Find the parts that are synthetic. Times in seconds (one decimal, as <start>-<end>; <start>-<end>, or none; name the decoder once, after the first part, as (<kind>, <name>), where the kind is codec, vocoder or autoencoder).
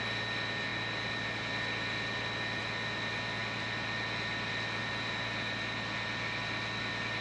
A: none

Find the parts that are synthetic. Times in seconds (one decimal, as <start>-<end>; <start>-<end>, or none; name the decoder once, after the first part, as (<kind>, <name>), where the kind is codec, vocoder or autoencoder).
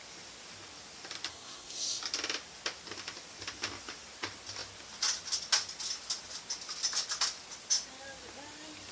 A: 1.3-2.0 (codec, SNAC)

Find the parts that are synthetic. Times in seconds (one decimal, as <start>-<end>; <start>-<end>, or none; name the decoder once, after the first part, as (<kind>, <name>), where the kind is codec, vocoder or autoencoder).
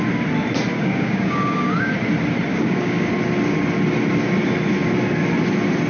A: 0.7-1.9 (codec, DAC); 2.5-3.1